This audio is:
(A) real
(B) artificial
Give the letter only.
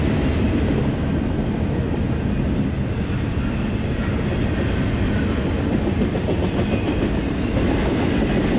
A